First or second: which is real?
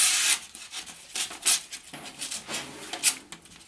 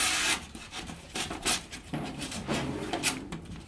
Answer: first